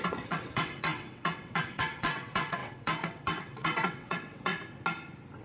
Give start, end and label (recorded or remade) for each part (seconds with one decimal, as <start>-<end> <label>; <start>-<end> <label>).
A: 0.0-4.5 remade; 4.5-5.4 recorded